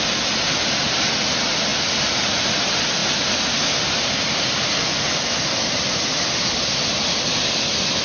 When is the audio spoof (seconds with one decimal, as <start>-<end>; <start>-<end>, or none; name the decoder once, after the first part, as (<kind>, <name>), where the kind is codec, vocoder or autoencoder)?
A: none